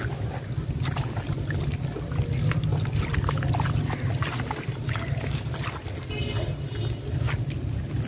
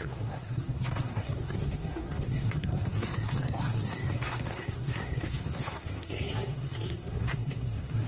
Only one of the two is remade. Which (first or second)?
second